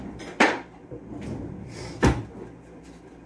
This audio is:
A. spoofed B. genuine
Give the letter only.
A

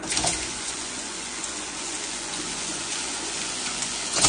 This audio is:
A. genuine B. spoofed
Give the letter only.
B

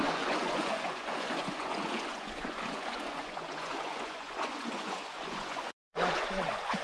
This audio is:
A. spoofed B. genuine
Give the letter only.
A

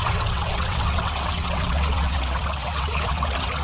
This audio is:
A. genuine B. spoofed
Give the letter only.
B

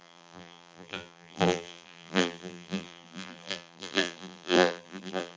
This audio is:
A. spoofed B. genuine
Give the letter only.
A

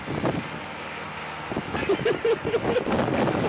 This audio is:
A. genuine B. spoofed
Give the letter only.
A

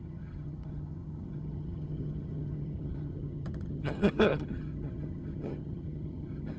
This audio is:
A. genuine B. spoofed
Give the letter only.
B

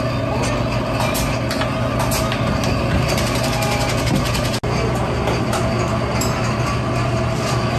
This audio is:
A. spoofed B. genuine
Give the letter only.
B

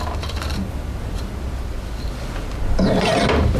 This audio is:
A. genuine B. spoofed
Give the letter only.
A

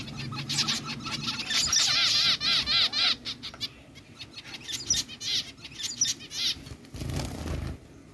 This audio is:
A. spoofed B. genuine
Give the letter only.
B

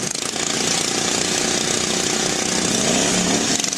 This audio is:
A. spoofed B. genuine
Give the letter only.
B